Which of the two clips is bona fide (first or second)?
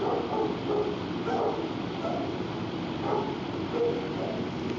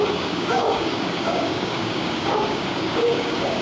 first